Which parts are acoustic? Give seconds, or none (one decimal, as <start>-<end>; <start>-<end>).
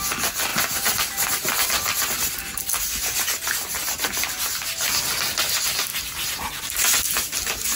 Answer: 0.0-7.8